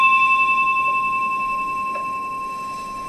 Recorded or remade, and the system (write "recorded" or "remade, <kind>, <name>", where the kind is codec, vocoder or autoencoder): remade, autoencoder, DAC-VAE